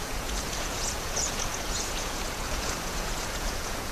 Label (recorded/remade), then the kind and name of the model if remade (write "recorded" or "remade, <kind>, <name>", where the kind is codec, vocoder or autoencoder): remade, vocoder, Vocos